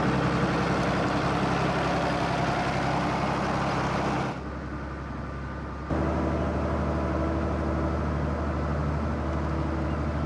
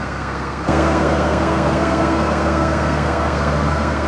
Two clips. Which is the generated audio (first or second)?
second